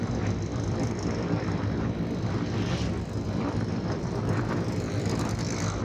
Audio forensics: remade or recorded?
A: remade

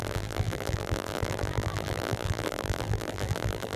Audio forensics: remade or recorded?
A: remade